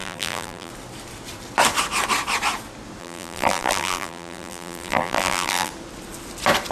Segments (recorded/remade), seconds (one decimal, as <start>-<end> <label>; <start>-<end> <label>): 0.0-0.7 remade; 0.7-3.0 recorded; 3.0-5.7 remade; 5.7-6.7 recorded